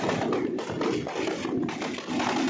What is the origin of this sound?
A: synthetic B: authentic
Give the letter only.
B